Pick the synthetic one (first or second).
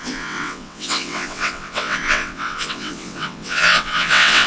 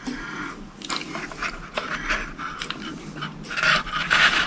first